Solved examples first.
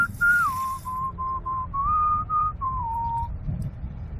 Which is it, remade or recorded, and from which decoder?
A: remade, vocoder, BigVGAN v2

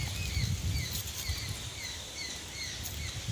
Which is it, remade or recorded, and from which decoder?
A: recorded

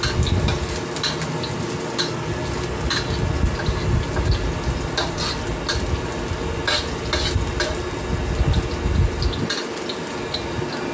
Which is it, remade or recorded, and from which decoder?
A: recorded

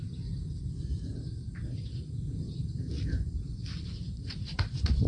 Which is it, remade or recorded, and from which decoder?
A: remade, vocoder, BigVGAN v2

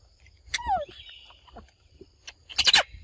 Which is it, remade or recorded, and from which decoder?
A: recorded